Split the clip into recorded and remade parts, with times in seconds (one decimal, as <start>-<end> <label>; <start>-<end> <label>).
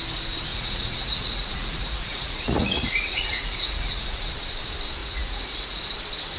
0.0-0.5 recorded; 0.5-4.3 remade; 4.3-5.0 recorded; 5.0-5.8 remade; 5.8-6.4 recorded